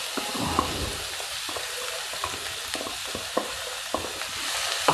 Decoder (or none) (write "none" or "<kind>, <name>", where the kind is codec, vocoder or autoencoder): none